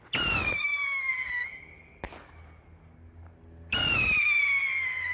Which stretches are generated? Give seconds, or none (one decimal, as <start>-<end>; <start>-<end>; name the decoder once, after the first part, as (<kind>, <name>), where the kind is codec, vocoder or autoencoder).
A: 0.4-1.1 (codec, DAC)